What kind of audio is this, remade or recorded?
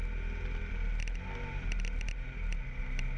recorded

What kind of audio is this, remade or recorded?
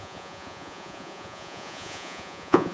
remade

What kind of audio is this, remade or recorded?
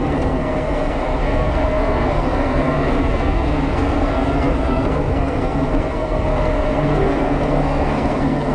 remade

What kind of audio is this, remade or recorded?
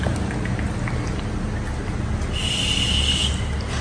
recorded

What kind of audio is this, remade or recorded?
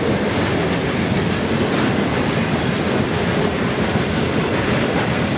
recorded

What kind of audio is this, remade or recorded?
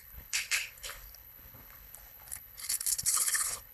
remade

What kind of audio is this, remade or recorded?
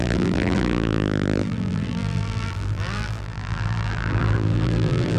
remade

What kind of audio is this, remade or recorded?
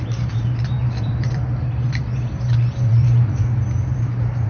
remade